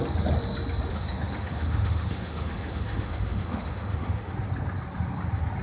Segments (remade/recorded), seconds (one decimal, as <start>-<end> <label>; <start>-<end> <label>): 0.0-0.9 recorded; 0.9-4.3 remade; 4.3-5.6 recorded